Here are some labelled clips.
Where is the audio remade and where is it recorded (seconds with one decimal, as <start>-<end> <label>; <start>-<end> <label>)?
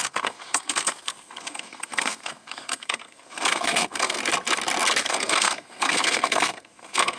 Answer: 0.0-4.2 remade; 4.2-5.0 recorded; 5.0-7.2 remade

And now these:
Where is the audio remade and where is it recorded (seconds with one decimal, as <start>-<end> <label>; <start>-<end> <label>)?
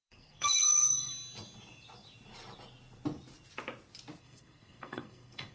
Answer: 0.0-1.1 remade; 1.1-4.2 recorded; 4.2-5.5 remade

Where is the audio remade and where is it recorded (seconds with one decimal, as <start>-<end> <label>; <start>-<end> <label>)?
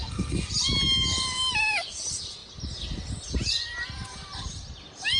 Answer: 0.0-0.5 remade; 0.5-5.2 recorded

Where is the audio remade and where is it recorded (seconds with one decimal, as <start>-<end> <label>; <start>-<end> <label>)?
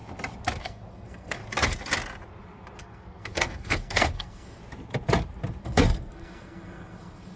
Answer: 0.0-0.6 recorded; 0.6-1.4 remade; 1.4-2.8 recorded; 2.8-4.6 remade; 4.6-5.6 recorded; 5.6-7.4 remade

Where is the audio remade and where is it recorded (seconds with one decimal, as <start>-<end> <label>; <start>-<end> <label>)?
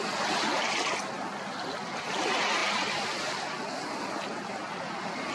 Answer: 0.0-5.3 recorded